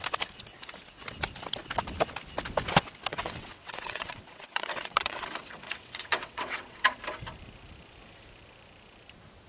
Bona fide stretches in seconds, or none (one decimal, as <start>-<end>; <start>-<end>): 0.0-3.1; 7.0-9.5

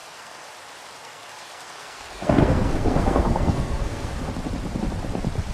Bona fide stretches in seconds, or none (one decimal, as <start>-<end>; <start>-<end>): 0.5-1.0; 4.3-5.5

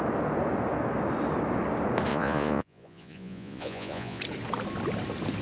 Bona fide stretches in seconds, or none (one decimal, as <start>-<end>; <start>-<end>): 0.0-2.1; 4.2-5.4

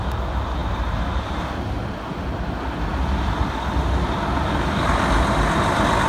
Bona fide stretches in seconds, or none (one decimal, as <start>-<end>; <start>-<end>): 0.0-0.6; 1.4-6.1

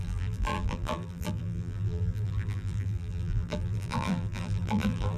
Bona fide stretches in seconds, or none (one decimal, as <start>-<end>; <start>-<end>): none

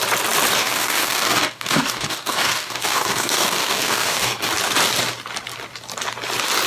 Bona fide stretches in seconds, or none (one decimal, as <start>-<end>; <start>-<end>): 0.0-0.5; 4.5-6.7

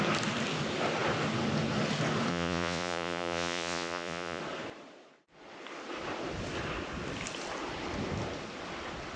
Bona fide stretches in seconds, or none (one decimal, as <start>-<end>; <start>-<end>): 0.0-2.3; 4.4-9.2

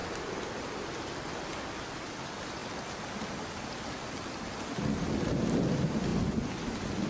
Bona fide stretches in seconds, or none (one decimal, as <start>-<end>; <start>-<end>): 0.0-7.1